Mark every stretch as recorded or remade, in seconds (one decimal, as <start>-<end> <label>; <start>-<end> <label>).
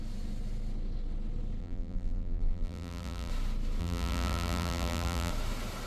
0.0-1.6 recorded; 1.6-3.3 remade; 3.3-3.8 recorded; 3.8-5.3 remade; 5.3-5.9 recorded